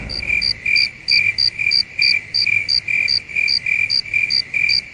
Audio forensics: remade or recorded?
recorded